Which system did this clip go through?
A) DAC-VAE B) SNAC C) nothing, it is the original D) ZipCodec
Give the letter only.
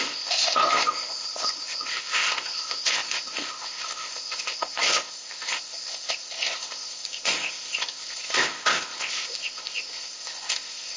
D